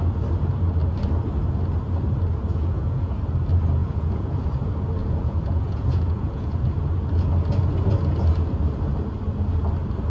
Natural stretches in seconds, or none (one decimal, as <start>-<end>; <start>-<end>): 0.0-2.5; 3.1-3.8; 4.3-5.0; 6.5-10.1